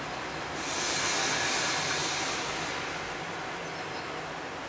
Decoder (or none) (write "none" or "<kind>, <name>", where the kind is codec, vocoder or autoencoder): none